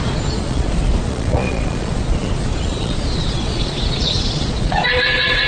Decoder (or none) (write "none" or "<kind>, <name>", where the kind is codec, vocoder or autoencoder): vocoder, Vocos